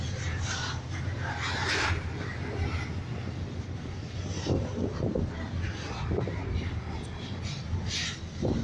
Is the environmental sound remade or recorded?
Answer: recorded